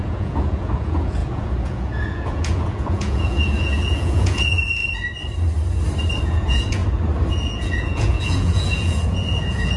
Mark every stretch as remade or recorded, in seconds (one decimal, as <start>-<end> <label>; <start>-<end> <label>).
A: 0.0-4.8 remade; 4.8-6.2 recorded; 6.2-6.8 remade; 6.8-7.3 recorded; 7.3-9.8 remade